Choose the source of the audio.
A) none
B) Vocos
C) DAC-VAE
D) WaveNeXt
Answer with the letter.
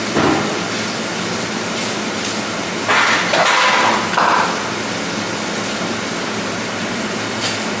A